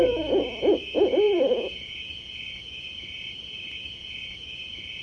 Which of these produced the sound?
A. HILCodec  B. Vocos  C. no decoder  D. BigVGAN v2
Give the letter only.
B